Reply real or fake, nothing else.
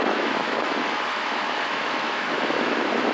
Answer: fake